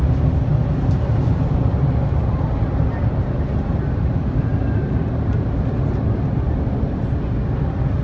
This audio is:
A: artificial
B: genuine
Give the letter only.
B